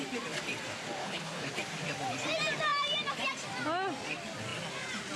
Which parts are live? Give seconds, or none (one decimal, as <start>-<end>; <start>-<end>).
0.0-1.0; 1.5-5.2